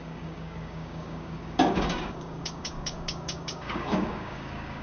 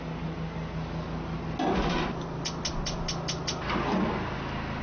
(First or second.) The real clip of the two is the second